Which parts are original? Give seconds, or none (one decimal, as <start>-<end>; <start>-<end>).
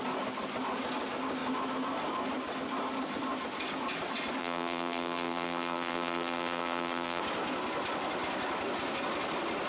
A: 0.0-4.4; 7.2-9.7